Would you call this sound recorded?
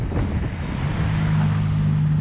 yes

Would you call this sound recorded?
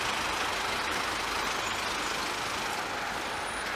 yes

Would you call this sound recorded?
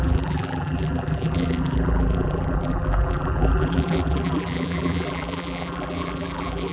no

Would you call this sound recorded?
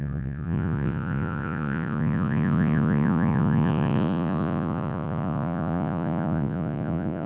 no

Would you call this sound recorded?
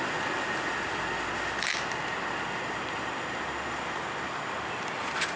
yes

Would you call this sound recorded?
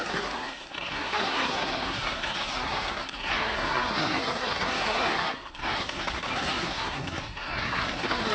no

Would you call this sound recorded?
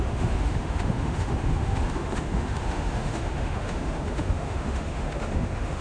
no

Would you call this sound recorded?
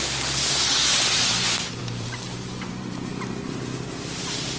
no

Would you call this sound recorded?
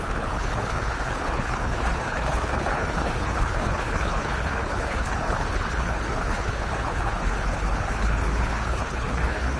no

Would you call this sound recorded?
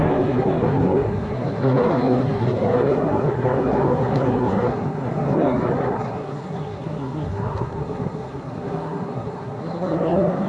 no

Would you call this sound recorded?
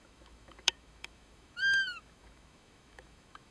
no